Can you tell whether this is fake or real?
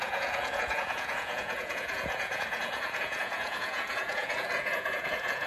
fake